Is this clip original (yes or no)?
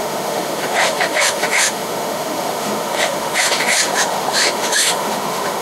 no